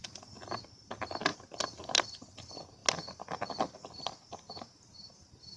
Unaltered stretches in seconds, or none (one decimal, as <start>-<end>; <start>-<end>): 0.0-5.6